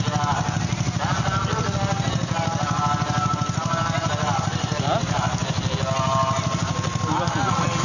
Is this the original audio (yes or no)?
yes